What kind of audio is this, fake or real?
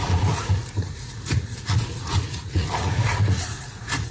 fake